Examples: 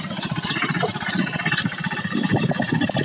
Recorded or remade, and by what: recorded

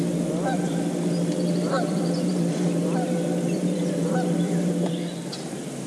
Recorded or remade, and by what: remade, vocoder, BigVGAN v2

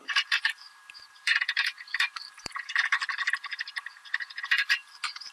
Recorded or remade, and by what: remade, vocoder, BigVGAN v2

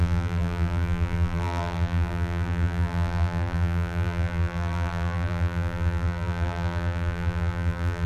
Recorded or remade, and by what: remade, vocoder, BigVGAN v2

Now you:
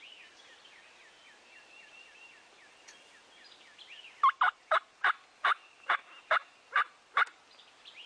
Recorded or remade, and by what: recorded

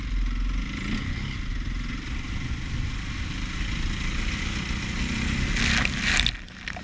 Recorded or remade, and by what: recorded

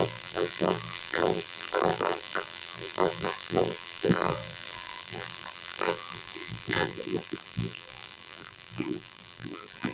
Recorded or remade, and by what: remade, vocoder, BigVGAN v2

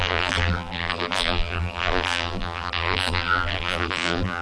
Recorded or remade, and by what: remade, vocoder, BigVGAN v2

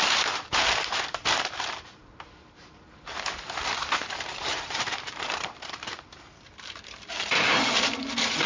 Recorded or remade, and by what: remade, vocoder, BigVGAN v2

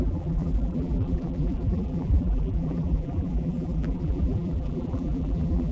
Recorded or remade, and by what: remade, vocoder, BigVGAN v2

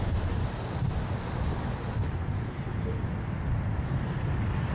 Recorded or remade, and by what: remade, vocoder, BigVGAN v2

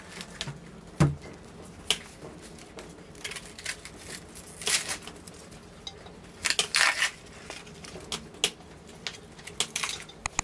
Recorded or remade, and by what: recorded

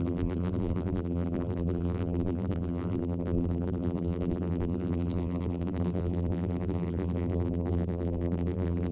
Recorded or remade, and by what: remade, vocoder, BigVGAN v2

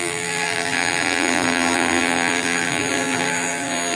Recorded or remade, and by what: remade, vocoder, BigVGAN v2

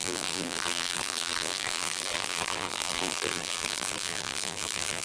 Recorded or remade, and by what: remade, vocoder, BigVGAN v2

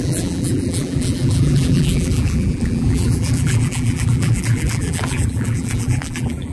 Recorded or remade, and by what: remade, vocoder, BigVGAN v2